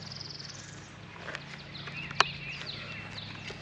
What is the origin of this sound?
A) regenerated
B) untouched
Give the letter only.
B